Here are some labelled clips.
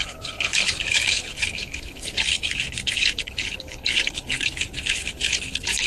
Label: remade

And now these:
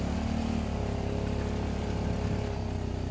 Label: recorded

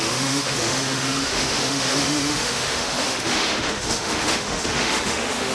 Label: remade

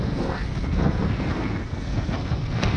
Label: remade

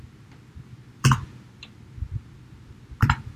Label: remade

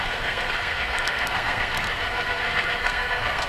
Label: remade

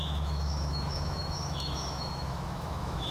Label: remade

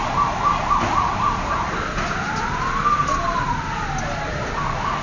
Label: recorded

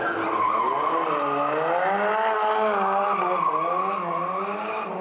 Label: recorded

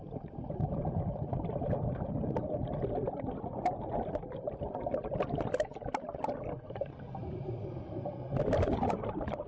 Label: recorded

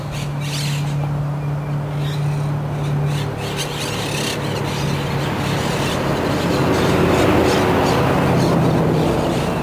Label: recorded